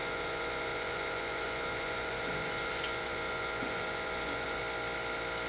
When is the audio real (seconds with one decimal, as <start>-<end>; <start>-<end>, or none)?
4.6-5.5